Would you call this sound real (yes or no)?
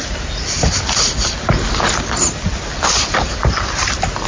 yes